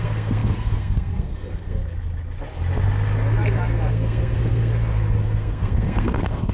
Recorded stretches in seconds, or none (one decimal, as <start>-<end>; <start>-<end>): 1.8-3.9; 4.7-5.2